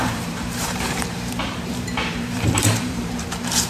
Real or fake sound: fake